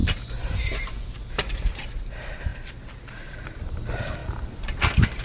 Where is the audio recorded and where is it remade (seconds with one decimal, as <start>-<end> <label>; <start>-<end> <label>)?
0.0-2.5 recorded; 2.5-3.8 remade; 3.8-4.2 recorded; 4.2-4.8 remade; 4.8-5.2 recorded